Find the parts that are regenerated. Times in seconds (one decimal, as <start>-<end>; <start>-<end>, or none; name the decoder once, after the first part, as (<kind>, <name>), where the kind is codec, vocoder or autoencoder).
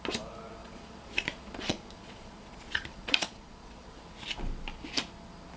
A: 0.6-4.0 (vocoder, Vocos)